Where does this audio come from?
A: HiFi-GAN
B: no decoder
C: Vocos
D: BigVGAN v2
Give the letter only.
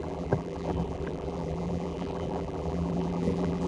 D